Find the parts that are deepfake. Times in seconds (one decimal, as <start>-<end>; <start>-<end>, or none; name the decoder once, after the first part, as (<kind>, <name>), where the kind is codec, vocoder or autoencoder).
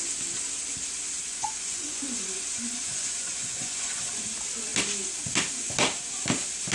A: 1.3-4.2 (vocoder, Vocos)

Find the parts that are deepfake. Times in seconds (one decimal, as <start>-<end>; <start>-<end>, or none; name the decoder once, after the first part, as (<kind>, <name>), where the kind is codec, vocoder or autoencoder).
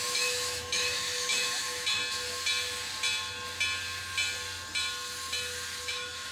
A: 0.0-2.0 (autoencoder, DAC-VAE); 5.8-6.3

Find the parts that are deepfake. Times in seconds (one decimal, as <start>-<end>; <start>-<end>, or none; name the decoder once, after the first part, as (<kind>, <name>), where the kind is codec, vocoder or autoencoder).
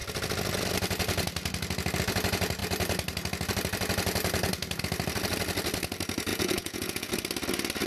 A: 6.3-7.1 (vocoder, Vocos)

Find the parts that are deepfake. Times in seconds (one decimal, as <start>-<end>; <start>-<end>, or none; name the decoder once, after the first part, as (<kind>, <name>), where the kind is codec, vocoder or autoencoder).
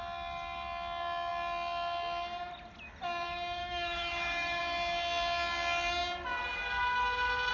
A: 3.6-4.6 (autoencoder, DAC-VAE)